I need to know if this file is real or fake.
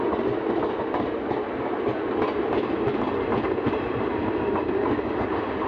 real